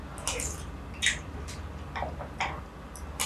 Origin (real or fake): real